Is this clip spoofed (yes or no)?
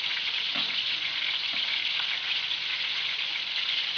yes